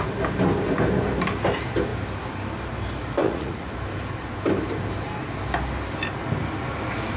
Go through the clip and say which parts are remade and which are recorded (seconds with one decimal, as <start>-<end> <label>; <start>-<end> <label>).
0.0-3.2 recorded; 3.2-3.7 remade; 3.7-7.2 recorded